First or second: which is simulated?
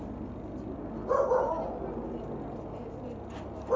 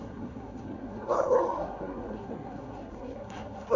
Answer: second